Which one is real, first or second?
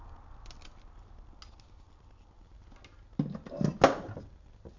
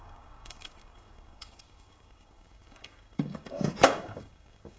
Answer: first